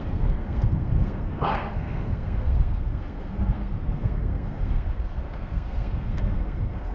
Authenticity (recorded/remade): remade